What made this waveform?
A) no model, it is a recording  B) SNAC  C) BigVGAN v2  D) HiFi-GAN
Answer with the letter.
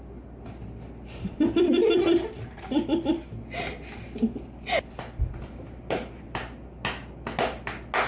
A